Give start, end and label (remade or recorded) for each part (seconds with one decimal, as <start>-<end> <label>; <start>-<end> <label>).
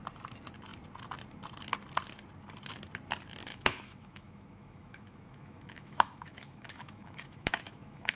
0.0-3.5 recorded; 3.5-8.2 remade